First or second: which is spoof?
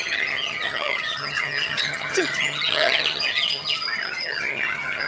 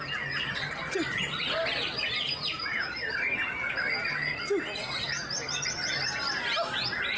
first